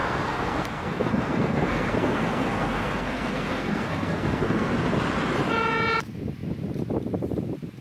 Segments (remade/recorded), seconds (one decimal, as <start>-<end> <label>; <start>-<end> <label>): 0.0-4.7 remade; 4.7-7.8 recorded